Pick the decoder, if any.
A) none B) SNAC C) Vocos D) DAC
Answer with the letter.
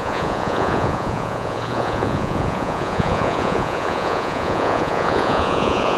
C